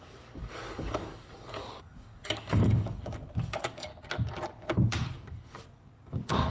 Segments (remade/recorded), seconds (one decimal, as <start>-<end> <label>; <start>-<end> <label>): 0.0-3.9 remade; 3.9-4.6 recorded; 4.6-6.5 remade

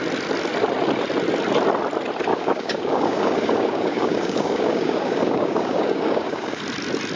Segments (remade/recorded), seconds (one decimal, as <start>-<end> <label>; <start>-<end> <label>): 0.0-2.3 recorded; 2.3-6.6 remade; 6.6-7.2 recorded

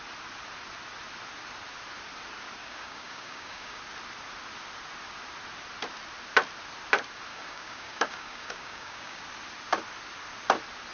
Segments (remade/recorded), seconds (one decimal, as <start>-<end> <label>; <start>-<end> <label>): 0.0-2.6 recorded; 2.6-3.8 remade; 3.8-7.3 recorded; 7.3-9.2 remade; 9.2-10.9 recorded

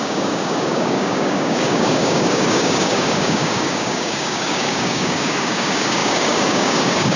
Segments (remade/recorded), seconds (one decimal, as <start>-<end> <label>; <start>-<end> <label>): 0.0-7.2 remade

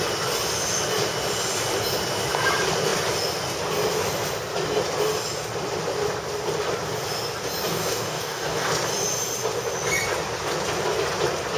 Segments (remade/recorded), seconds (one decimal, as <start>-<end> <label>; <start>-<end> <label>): 0.0-7.7 recorded; 7.7-8.7 remade; 8.7-11.6 recorded